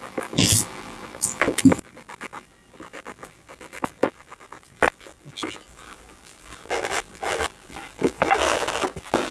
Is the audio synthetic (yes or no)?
yes